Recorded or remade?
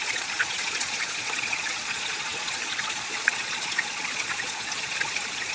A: remade